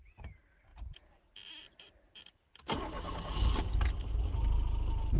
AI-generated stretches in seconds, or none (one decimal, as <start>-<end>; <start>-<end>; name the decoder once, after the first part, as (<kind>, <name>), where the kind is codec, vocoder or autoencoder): none

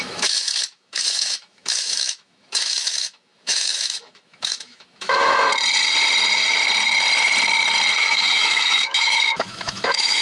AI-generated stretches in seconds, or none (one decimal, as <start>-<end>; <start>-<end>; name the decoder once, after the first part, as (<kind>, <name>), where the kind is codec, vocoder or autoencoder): 0.0-5.5 (autoencoder, DAC-VAE); 8.0-10.2

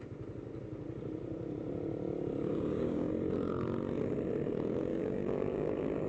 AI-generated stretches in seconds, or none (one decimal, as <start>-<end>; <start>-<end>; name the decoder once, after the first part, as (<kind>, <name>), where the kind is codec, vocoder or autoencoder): 2.5-3.1 (codec, DAC); 4.9-6.1

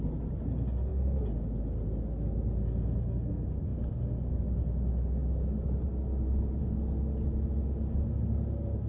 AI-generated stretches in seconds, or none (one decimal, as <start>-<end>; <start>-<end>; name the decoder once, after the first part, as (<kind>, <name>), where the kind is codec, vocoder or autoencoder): none

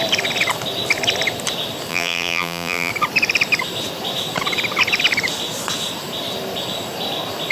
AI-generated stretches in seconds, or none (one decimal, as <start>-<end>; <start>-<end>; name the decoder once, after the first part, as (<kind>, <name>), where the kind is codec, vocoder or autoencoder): 1.9-2.9 (vocoder, BigVGAN v2)

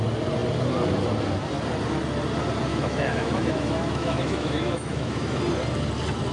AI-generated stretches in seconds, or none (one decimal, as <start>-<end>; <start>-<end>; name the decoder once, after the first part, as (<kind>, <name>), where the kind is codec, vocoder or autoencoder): 2.7-5.4 (autoencoder, DAC-VAE)